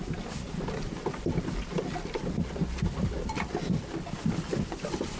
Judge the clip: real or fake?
real